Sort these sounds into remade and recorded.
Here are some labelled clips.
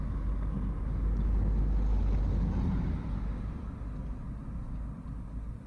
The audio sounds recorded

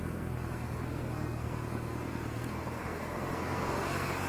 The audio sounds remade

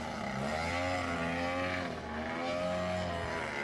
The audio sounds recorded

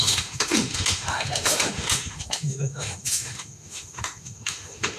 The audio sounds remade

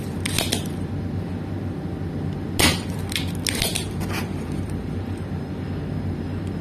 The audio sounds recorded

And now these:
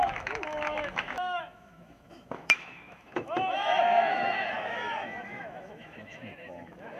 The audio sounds remade